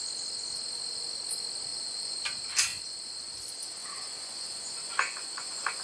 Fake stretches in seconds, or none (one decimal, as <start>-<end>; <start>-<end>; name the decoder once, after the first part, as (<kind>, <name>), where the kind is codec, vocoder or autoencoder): 1.7-2.2 (vocoder, Vocos); 2.7-3.4; 3.8-5.8